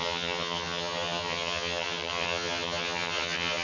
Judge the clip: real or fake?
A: fake